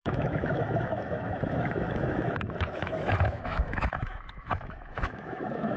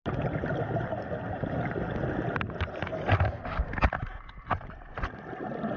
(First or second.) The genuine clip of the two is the second